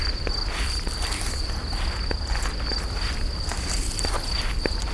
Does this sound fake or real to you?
real